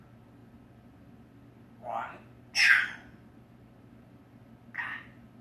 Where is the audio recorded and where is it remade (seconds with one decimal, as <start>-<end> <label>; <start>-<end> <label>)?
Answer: 0.0-5.4 recorded